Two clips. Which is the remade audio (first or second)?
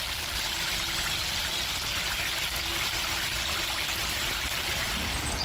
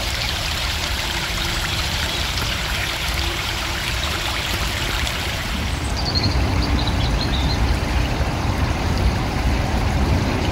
second